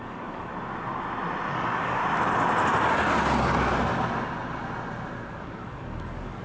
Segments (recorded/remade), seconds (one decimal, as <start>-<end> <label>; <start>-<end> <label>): 0.0-0.5 remade; 0.5-1.5 recorded; 1.5-2.0 remade; 2.0-5.3 recorded; 5.3-6.4 remade